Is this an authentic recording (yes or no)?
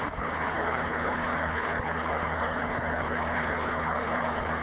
no